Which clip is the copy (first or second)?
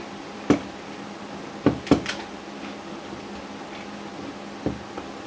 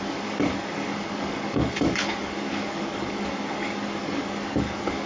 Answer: second